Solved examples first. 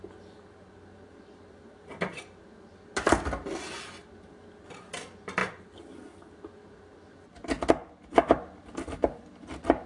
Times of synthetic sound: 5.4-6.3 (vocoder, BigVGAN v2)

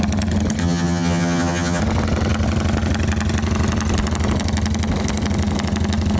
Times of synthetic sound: 0.6-1.8 (vocoder, HiFi-GAN)

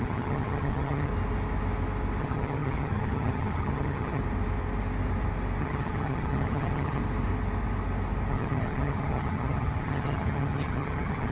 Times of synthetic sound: 0.0-1.1 (vocoder, HiFi-GAN); 2.2-4.2; 5.6-7.0; 8.3-11.3

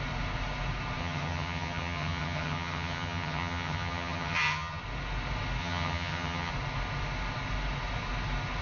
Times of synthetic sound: 1.0-4.8 (vocoder, HiFi-GAN); 5.6-6.5

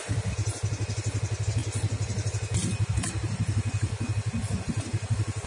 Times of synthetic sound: none

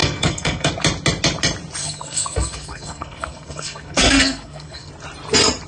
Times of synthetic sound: 0.0-0.7 (codec, SNAC); 1.8-4.9